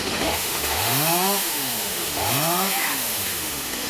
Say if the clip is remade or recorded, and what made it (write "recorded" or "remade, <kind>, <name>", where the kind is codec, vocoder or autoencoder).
remade, autoencoder, DAC-VAE